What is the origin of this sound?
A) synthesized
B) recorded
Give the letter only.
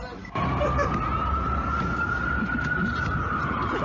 B